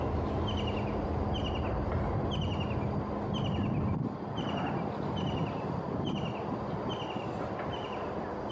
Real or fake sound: real